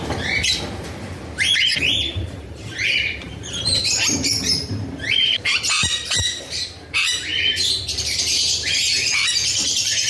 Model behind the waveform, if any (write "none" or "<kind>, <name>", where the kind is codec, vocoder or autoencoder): vocoder, BigVGAN v2